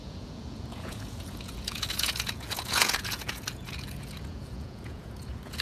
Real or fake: fake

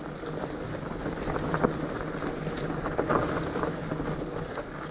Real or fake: real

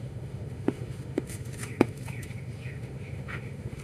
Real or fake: fake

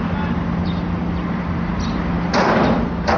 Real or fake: real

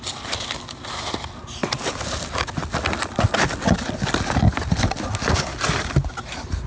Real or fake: real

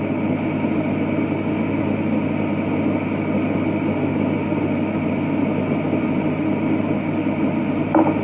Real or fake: real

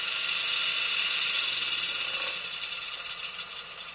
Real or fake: real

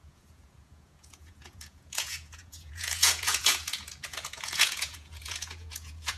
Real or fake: fake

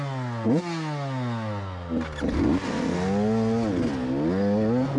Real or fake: real